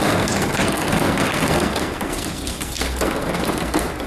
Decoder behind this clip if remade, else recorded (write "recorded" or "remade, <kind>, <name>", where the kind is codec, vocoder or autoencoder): remade, codec, SNAC